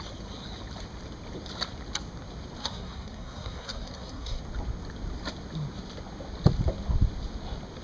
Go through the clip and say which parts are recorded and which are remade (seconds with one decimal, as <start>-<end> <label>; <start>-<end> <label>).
0.0-2.6 recorded; 2.6-4.4 remade; 4.4-7.8 recorded

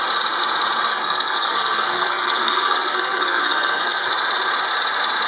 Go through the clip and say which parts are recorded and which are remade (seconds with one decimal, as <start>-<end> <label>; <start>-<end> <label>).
0.0-0.9 recorded; 0.9-4.1 remade; 4.1-5.3 recorded